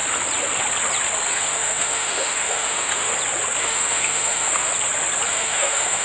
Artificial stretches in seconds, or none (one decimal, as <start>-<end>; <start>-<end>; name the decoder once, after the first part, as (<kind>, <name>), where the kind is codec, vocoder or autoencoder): 1.3-3.1 (autoencoder, DAC-VAE); 3.6-4.7; 5.3-6.0